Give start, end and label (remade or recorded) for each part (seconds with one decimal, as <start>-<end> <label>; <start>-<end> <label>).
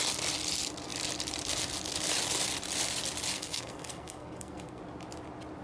0.0-3.3 recorded; 3.3-4.8 remade; 4.8-5.6 recorded